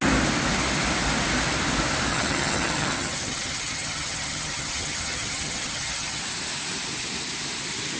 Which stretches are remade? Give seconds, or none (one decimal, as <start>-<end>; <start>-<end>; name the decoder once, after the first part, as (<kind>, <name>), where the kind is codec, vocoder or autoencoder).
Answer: 2.1-6.2 (vocoder, HiFi-GAN)